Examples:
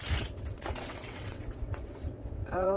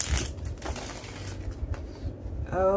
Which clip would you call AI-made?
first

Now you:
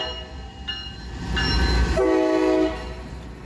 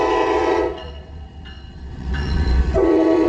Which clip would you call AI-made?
second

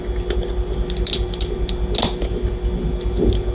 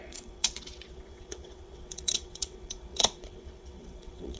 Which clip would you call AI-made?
second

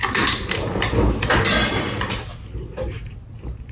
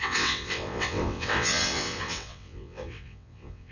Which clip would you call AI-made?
second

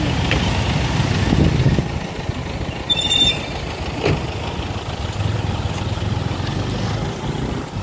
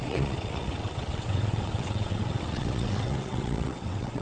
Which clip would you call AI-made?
second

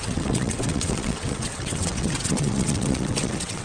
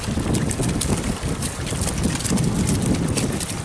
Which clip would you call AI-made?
first